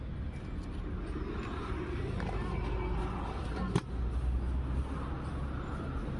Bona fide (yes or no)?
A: yes